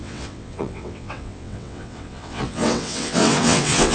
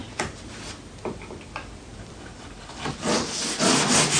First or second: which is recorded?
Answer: second